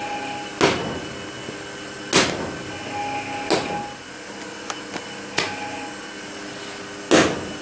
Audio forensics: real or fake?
real